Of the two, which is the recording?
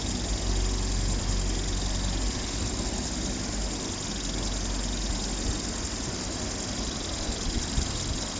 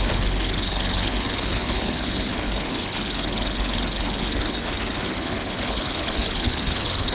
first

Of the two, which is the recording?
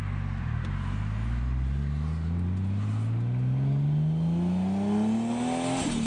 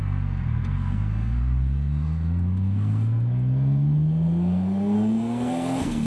first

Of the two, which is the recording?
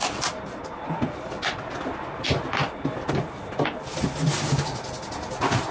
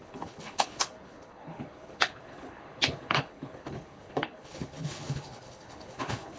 first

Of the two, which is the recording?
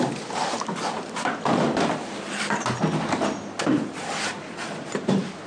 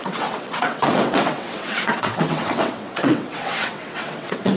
first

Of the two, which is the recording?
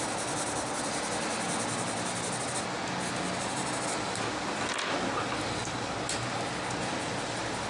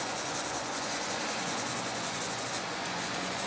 first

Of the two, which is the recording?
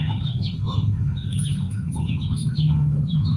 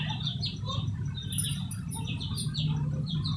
second